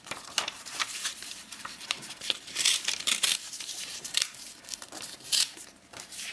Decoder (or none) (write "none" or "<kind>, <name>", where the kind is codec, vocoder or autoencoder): vocoder, BigVGAN v2